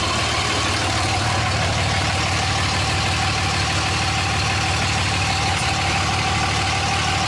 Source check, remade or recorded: recorded